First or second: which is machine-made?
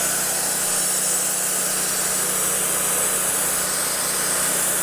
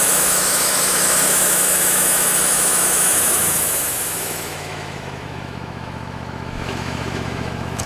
second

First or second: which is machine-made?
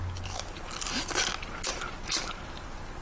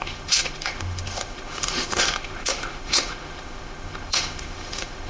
second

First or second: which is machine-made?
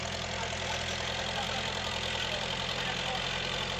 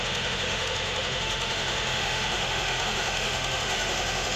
second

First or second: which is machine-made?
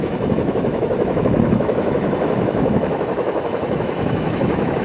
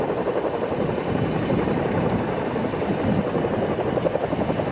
first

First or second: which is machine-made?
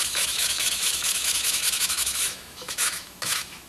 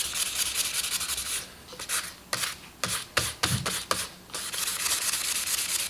first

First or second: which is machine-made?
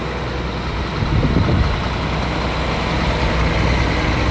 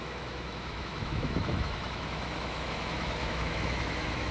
second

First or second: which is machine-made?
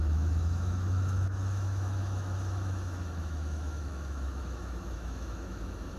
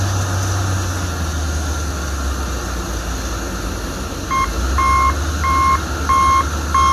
first